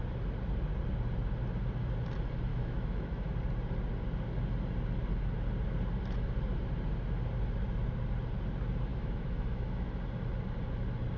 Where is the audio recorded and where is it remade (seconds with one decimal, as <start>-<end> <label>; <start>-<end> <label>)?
0.0-2.5 recorded; 2.5-3.3 remade; 3.3-8.9 recorded; 8.9-9.9 remade; 9.9-11.2 recorded